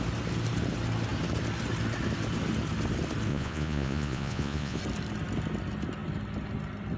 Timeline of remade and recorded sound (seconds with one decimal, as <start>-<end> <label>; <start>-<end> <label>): 0.0-3.3 recorded; 3.3-4.8 remade; 4.8-7.0 recorded